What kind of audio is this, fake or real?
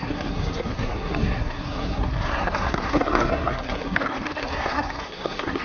fake